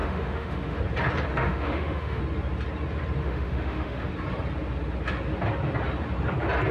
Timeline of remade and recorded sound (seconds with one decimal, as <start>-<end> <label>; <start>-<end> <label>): 0.0-0.8 remade; 0.8-1.3 recorded; 1.3-2.2 remade; 2.2-3.2 recorded; 3.2-4.1 remade; 4.1-6.7 recorded

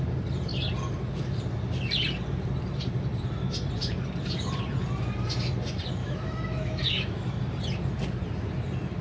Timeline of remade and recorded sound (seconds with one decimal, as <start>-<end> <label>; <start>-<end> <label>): 0.0-6.0 recorded; 6.0-7.4 remade; 7.4-9.0 recorded

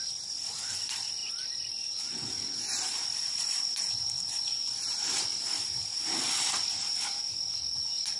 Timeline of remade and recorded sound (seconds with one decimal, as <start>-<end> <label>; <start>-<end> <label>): 0.0-8.2 recorded

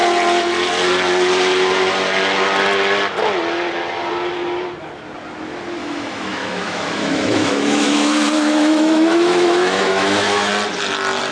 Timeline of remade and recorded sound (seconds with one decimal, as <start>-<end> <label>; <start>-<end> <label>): 0.0-5.8 recorded; 5.8-10.5 remade; 10.5-11.3 recorded